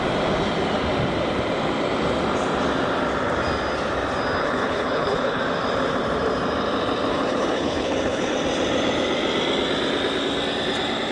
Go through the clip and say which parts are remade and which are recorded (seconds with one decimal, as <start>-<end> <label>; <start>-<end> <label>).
0.0-4.4 recorded; 4.4-5.4 remade; 5.4-7.1 recorded; 7.1-8.3 remade; 8.3-11.1 recorded